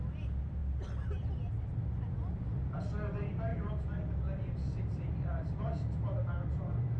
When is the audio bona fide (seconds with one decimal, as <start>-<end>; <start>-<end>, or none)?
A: 0.0-0.6; 1.3-3.5